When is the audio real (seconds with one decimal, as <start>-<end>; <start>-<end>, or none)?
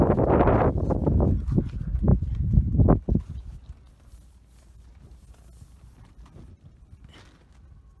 0.0-8.0